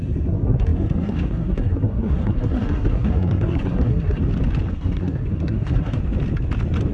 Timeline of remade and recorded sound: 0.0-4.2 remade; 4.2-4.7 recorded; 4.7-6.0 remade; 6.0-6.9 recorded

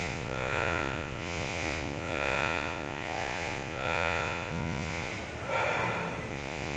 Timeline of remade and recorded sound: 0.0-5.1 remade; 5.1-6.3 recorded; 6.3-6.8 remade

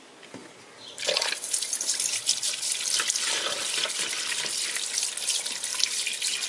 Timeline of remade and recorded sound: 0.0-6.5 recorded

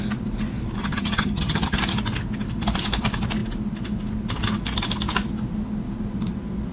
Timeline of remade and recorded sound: 0.0-0.8 recorded; 0.8-1.8 remade; 1.8-6.7 recorded

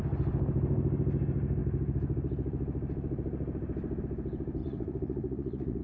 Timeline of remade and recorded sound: 0.0-4.6 recorded; 4.6-5.8 remade

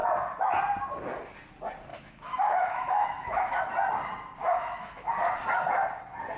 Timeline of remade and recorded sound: 0.0-1.9 recorded; 1.9-3.6 remade; 3.6-4.4 recorded; 4.4-5.1 remade; 5.1-6.4 recorded

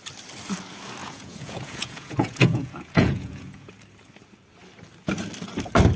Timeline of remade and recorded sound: 0.0-1.0 recorded; 1.0-3.7 remade; 3.7-6.0 recorded

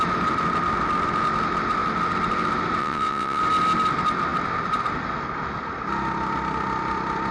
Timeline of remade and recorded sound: 0.0-2.8 recorded; 2.8-3.4 remade; 3.4-7.3 recorded